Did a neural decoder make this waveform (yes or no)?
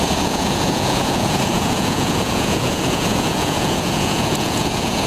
yes